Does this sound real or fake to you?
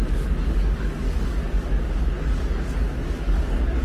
fake